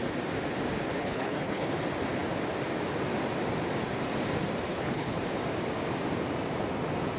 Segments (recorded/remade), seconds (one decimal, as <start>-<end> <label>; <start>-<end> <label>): 0.0-1.0 recorded; 1.0-1.7 remade; 1.7-4.7 recorded; 4.7-5.2 remade; 5.2-7.2 recorded